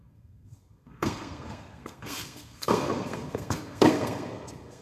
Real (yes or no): no